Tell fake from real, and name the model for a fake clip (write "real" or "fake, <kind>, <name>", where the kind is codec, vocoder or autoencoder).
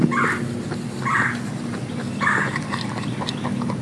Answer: real